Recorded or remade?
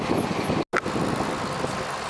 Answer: recorded